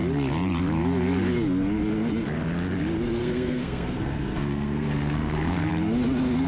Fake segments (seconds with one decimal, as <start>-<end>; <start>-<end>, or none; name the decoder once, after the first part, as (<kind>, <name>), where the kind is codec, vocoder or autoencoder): 3.2-5.7 (codec, SNAC)